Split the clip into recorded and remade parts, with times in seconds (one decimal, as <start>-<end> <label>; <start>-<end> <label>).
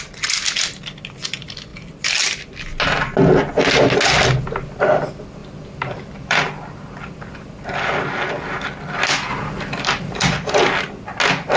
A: 0.0-5.4 recorded; 5.4-6.6 remade; 6.6-9.3 recorded; 9.3-10.2 remade; 10.2-11.6 recorded